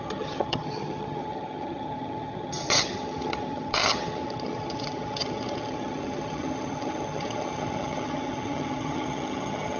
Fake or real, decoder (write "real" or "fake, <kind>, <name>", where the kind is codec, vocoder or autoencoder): fake, vocoder, HiFi-GAN